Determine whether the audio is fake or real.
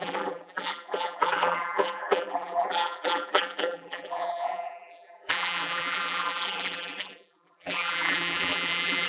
fake